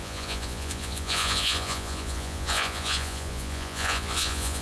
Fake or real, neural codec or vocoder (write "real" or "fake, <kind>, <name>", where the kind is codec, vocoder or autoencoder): fake, vocoder, Vocos